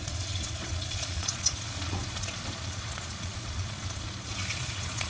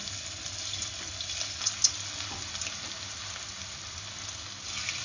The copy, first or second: first